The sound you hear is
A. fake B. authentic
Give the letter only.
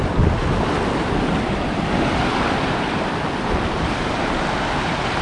B